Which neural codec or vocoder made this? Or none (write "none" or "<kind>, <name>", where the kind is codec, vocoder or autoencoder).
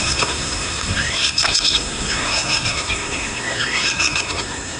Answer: codec, SNAC